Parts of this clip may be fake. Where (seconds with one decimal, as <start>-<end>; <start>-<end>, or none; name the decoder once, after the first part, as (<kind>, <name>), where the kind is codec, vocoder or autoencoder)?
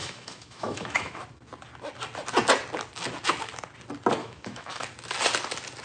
0.0-1.2 (autoencoder, DAC-VAE); 4.2-4.8